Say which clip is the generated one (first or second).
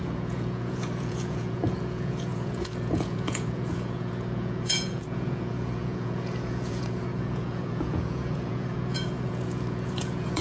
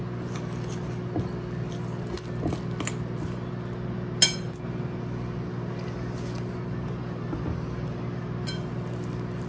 first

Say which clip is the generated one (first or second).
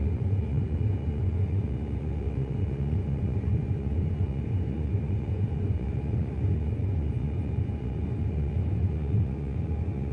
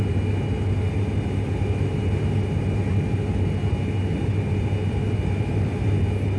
first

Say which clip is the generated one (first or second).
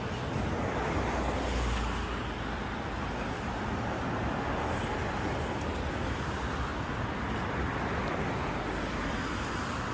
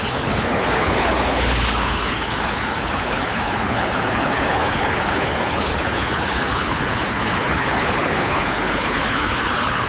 second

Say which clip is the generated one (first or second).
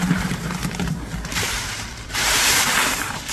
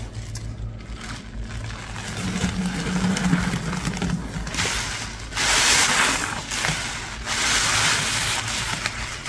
first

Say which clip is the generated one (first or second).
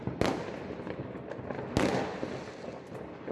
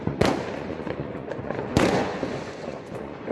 second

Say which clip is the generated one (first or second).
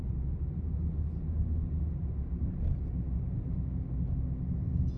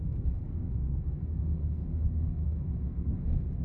second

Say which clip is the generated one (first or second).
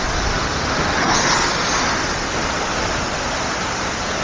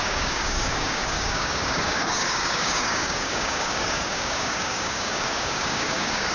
second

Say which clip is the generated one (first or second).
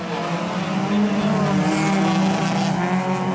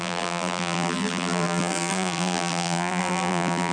second